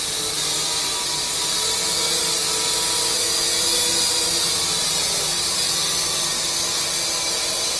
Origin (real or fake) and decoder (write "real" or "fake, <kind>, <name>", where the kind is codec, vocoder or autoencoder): real